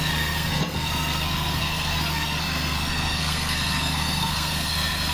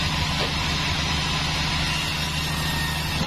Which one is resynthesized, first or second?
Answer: first